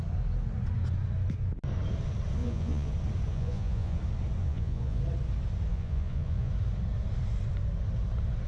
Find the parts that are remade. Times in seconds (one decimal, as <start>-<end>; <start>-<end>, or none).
2.4-2.9; 3.3-4.0; 4.4-5.0; 5.7-6.5